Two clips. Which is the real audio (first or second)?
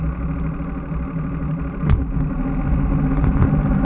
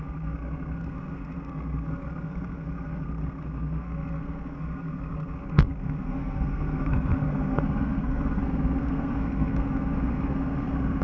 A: first